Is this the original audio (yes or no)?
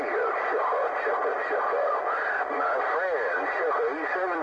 yes